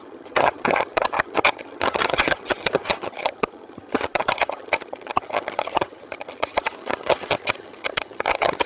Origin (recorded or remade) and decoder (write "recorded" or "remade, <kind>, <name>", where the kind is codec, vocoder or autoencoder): remade, vocoder, HiFi-GAN